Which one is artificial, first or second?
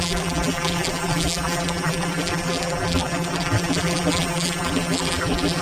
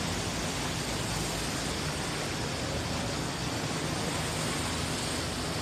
first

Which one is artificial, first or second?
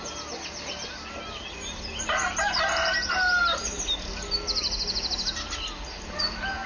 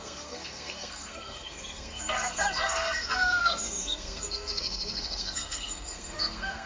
second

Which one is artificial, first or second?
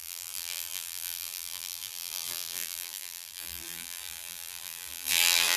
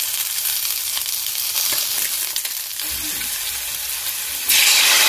first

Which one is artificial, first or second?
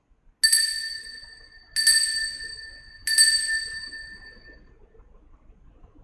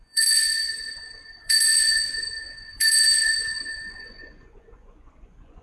second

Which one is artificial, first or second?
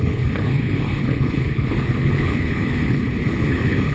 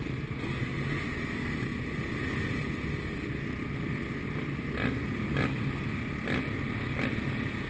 first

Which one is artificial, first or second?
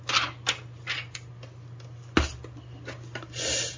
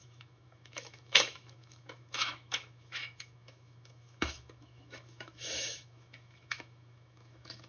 second